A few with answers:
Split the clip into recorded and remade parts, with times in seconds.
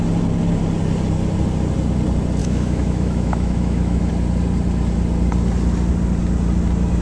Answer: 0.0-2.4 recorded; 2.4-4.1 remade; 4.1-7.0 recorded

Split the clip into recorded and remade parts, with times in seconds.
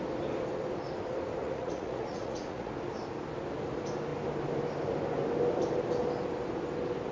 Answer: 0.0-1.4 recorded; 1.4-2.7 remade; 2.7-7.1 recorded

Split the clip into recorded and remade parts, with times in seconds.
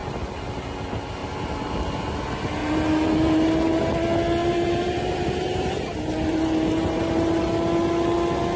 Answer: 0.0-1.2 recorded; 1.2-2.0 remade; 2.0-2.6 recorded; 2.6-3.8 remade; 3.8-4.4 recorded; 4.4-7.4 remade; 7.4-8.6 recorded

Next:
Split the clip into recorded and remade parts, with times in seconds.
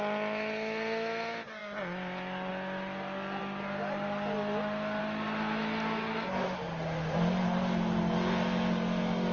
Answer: 0.0-9.3 recorded